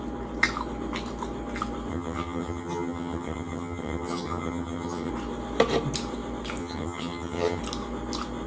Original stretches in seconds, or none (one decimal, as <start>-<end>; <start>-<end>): 0.0-1.9; 5.1-6.6; 7.6-8.5